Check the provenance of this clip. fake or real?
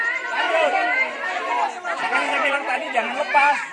fake